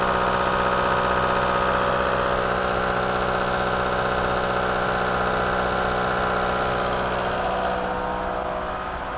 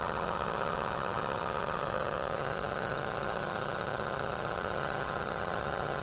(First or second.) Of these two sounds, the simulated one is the second